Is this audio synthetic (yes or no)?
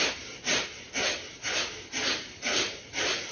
no